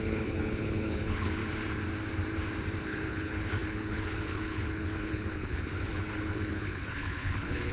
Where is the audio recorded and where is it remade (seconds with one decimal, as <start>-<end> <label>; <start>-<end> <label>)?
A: 0.0-1.4 remade; 1.4-2.8 recorded; 2.8-7.7 remade